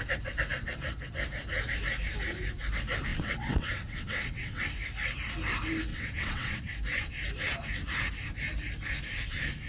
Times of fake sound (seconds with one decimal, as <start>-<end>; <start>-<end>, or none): 3.1-4.6; 5.9-6.7